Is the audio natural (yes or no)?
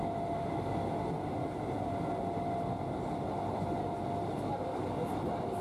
yes